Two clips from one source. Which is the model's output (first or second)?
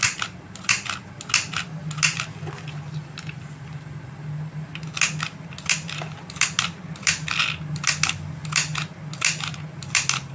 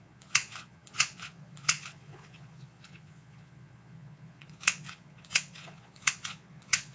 second